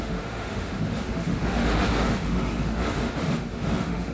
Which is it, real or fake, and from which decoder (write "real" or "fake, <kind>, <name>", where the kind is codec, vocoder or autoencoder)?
fake, autoencoder, DAC-VAE